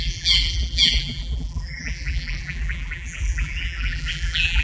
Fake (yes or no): yes